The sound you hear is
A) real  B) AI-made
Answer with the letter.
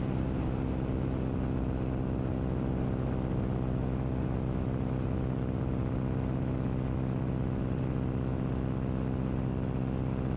A